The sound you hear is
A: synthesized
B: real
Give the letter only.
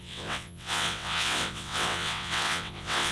A